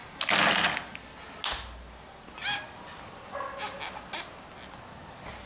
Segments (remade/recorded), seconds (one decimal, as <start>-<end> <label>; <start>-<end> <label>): 0.0-5.5 recorded